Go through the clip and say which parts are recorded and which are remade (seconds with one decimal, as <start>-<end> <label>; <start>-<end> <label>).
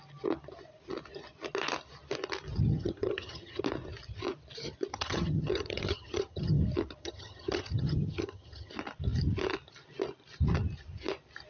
0.0-2.7 recorded; 2.7-3.6 remade; 3.6-4.9 recorded; 4.9-6.6 remade; 6.6-7.0 recorded; 7.0-8.7 remade; 8.7-11.5 recorded